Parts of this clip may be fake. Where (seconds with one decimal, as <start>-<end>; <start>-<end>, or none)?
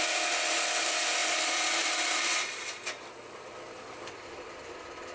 none